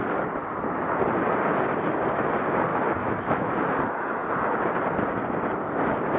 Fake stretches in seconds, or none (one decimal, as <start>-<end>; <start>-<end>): 2.7-3.5